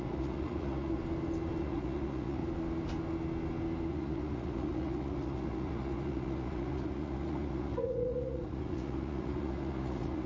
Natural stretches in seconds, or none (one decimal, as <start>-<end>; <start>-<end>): 1.0-1.6; 2.4-3.9